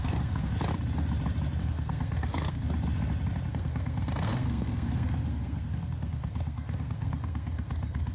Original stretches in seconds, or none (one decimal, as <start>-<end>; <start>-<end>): 0.5-1.6; 2.6-3.5